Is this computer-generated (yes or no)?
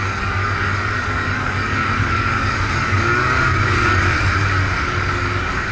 yes